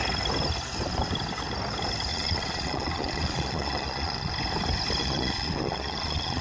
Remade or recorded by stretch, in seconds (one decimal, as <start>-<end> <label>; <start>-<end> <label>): 0.0-2.1 recorded; 2.1-4.3 remade; 4.3-5.0 recorded; 5.0-6.4 remade